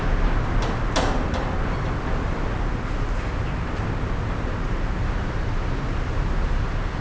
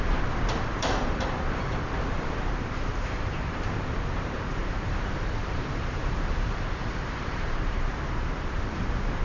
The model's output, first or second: second